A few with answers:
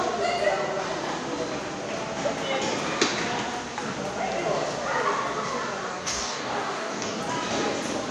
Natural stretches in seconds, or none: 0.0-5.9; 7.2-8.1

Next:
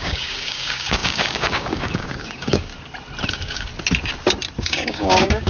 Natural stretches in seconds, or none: 2.7-3.3; 3.7-4.6

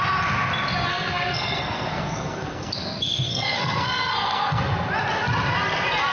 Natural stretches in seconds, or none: 0.0-0.9; 4.6-6.1

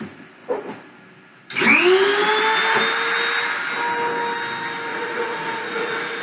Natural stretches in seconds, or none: 0.0-4.9

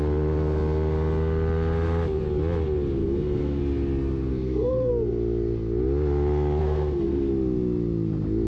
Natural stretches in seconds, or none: 0.0-3.0; 3.6-4.3; 4.9-6.6; 7.3-8.5

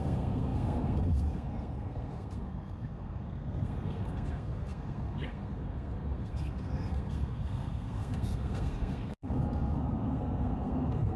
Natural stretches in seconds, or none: none

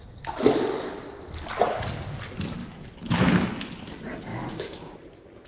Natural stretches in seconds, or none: 0.0-2.6; 3.5-4.3; 4.9-5.5

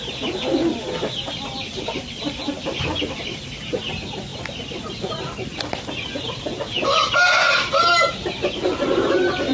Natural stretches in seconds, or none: 0.0-9.5